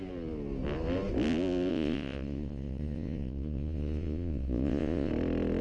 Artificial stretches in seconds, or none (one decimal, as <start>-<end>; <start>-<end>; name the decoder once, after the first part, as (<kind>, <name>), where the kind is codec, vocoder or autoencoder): 1.7-5.1 (vocoder, Vocos)